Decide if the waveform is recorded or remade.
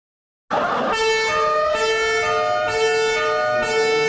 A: recorded